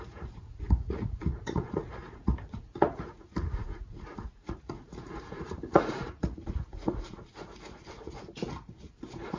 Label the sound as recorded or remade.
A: remade